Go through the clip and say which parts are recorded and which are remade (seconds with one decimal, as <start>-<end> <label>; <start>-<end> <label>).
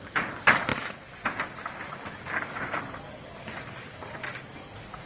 0.0-5.1 recorded